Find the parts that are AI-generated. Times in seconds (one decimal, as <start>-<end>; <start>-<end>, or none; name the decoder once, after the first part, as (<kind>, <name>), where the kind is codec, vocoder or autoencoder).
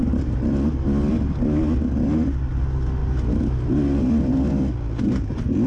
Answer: none